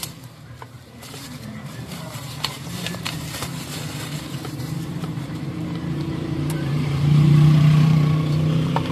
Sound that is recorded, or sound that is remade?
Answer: remade